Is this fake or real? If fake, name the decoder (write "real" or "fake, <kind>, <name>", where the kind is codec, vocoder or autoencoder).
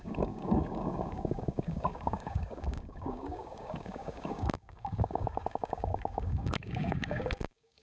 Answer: fake, codec, DAC